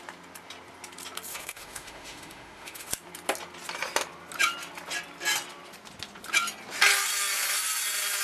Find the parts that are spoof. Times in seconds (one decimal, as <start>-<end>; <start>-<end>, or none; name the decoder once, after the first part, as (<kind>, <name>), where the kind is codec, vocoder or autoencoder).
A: 1.3-2.9 (autoencoder, DAC-VAE)